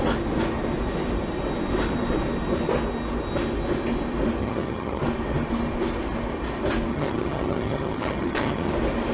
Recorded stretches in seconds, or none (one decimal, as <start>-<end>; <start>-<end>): 0.0-4.4; 5.0-6.9; 8.7-9.1